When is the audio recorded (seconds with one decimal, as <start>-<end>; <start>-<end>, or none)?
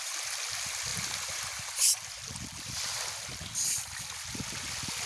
0.0-5.1